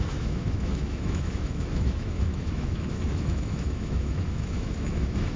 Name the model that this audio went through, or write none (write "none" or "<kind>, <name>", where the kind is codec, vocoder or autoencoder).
autoencoder, DAC-VAE